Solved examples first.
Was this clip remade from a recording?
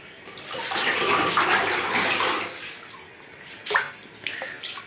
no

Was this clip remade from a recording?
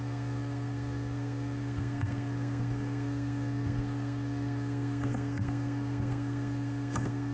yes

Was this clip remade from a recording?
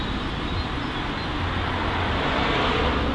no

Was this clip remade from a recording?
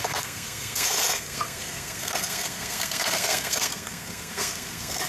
yes